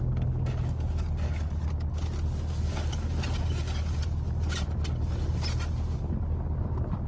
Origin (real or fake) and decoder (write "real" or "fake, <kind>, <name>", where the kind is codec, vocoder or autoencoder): real